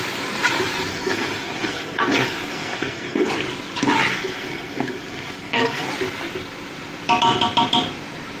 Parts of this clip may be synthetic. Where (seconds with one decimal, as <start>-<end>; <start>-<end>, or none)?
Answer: 0.9-3.3; 4.1-5.9